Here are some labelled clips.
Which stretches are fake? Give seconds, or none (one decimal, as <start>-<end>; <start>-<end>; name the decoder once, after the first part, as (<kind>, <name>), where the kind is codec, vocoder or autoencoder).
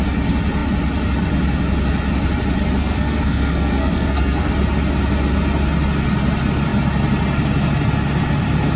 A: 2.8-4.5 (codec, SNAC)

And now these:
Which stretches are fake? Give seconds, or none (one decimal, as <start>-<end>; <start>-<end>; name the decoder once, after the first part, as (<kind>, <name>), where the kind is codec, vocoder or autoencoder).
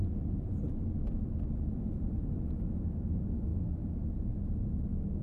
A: none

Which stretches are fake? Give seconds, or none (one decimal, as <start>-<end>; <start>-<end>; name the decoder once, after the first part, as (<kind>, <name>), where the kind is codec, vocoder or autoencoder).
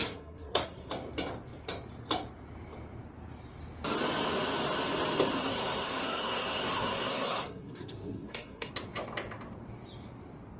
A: 0.0-0.9 (codec, SNAC); 5.4-8.7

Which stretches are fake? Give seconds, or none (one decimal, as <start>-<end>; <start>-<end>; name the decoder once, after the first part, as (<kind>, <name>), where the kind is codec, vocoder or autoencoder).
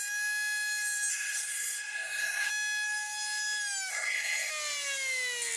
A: 1.1-2.5 (codec, SNAC); 3.9-4.5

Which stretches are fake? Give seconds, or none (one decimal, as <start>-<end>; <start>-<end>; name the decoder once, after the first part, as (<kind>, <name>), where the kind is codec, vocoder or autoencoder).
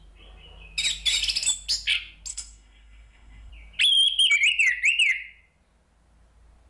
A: 2.3-3.5 (codec, SNAC)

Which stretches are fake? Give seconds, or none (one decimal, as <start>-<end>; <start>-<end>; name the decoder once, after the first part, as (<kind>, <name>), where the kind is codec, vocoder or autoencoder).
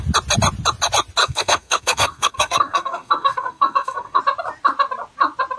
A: 1.2-4.2 (codec, SNAC)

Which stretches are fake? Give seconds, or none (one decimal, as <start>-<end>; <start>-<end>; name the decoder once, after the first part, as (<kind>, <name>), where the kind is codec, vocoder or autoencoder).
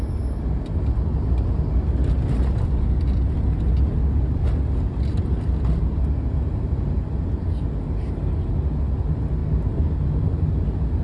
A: none